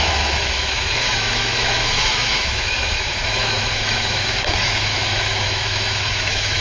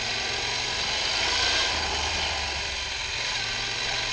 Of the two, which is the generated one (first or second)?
first